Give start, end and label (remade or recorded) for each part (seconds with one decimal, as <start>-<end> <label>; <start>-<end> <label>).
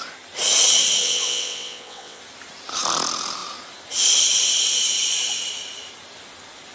0.0-1.0 recorded; 1.0-2.2 remade; 2.2-6.7 recorded